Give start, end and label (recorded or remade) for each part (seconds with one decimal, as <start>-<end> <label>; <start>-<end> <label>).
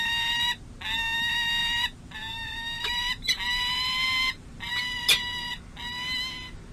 0.0-1.6 recorded; 1.6-5.6 remade; 5.6-6.7 recorded